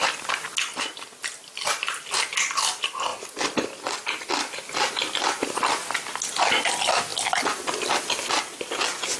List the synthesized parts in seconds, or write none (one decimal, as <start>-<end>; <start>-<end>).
none